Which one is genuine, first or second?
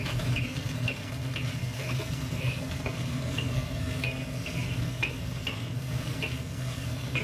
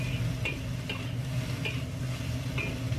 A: second